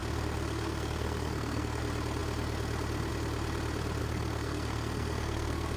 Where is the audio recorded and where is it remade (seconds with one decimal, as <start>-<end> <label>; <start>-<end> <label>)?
0.0-1.8 remade; 1.8-4.0 recorded; 4.0-5.8 remade